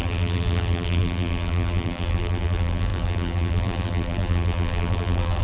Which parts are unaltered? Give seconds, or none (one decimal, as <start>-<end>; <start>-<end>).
none